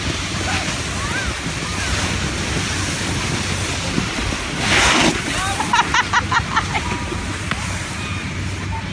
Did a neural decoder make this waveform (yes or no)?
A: no